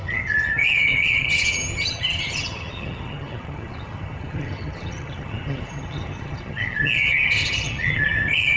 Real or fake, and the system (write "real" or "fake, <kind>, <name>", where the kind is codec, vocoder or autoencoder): fake, vocoder, HiFi-GAN